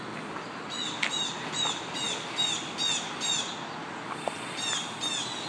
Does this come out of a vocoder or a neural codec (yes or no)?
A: no